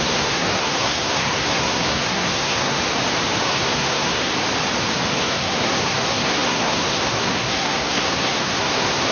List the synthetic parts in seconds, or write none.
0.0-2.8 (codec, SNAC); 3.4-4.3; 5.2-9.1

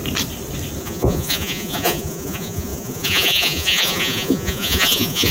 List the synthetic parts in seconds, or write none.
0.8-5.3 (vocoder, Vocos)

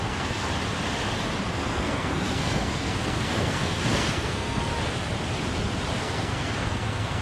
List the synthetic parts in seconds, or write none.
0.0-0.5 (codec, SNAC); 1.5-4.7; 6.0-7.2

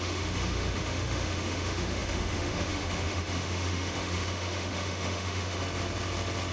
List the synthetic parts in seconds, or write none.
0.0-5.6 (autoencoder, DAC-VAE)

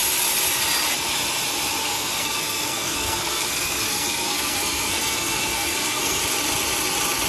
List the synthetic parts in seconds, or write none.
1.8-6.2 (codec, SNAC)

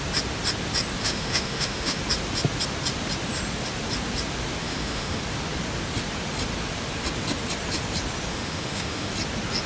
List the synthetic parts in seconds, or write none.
1.0-2.0 (autoencoder, DAC-VAE); 4.6-5.2; 8.3-9.1

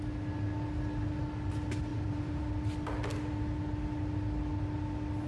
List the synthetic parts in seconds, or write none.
1.9-2.4 (vocoder, BigVGAN v2)